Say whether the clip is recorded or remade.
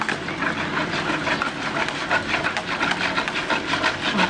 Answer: recorded